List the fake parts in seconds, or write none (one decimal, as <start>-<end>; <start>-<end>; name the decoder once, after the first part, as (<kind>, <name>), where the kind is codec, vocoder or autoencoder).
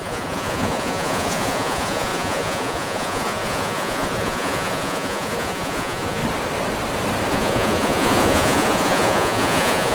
0.0-6.2 (vocoder, Vocos); 7.3-9.9